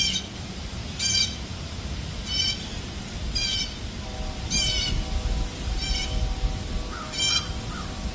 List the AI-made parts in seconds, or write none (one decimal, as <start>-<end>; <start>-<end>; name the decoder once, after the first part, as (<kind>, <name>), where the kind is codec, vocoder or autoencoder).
none